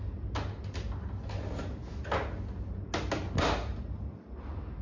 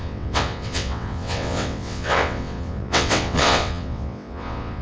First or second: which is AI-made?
second